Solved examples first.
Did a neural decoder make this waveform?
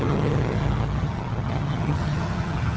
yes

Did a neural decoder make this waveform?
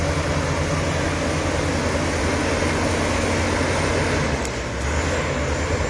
no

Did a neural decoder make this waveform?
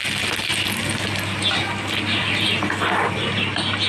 no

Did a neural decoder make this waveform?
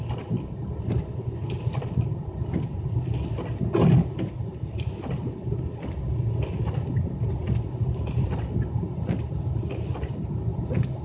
no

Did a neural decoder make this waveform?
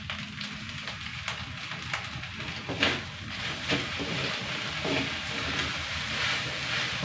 no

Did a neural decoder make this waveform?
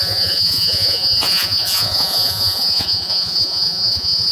yes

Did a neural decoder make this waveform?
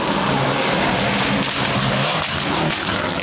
no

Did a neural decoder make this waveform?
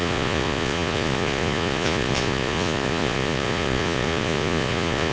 yes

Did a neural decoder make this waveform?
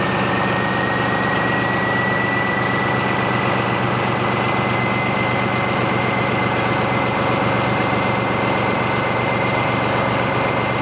no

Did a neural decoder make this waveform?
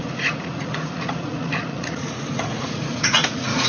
yes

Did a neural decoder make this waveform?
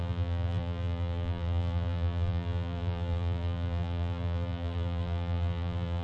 yes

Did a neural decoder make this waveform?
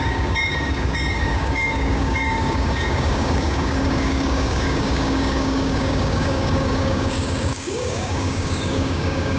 yes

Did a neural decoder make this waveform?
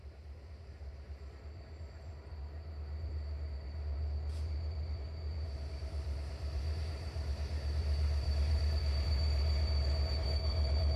yes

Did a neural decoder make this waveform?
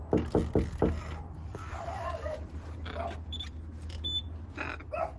no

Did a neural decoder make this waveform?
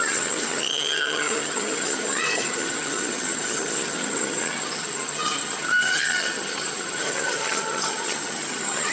yes